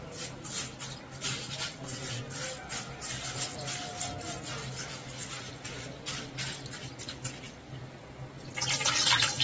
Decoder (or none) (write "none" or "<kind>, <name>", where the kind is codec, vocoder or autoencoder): none